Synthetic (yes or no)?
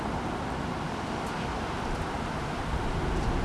no